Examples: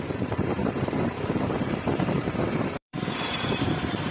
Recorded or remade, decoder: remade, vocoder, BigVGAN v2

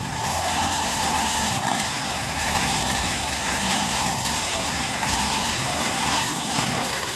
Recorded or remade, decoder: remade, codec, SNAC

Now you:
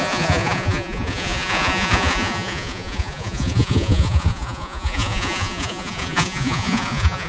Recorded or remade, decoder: remade, vocoder, Vocos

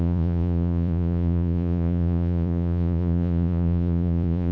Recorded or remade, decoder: remade, vocoder, Vocos